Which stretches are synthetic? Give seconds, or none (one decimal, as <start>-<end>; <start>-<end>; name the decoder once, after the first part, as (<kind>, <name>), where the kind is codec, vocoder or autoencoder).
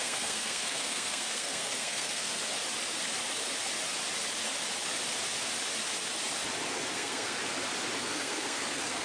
0.0-2.5 (codec, SNAC); 6.9-7.4; 8.0-9.0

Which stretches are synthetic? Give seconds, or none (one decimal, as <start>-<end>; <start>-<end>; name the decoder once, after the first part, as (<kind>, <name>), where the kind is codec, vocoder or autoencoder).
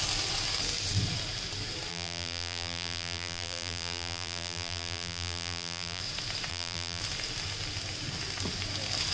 1.9-6.0 (vocoder, BigVGAN v2); 6.5-7.0